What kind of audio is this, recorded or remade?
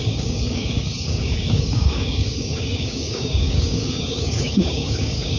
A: remade